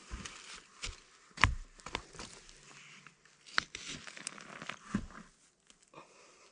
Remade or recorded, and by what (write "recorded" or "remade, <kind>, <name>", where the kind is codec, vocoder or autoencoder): recorded